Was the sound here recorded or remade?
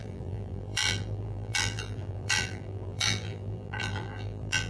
remade